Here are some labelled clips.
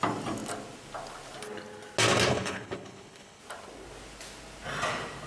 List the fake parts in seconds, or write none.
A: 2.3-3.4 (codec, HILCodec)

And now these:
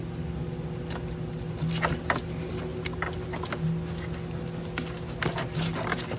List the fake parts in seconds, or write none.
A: none

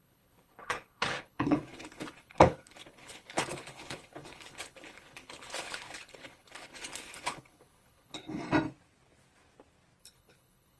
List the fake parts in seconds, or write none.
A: 0.0-8.4 (codec, HILCodec); 10.0-10.8

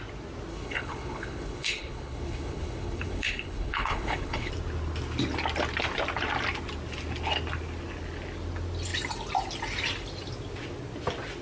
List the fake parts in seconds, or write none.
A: 0.5-4.5 (codec, HILCodec)

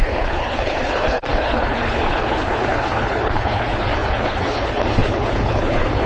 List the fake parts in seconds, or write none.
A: 0.0-6.1 (codec, HILCodec)

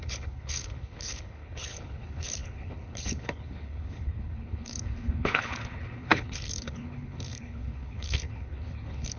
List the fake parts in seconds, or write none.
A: 0.0-9.2 (codec, HILCodec)

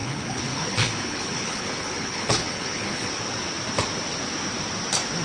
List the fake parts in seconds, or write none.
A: 0.0-3.1 (codec, HILCodec)

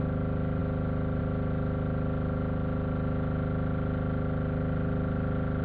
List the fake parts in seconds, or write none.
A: none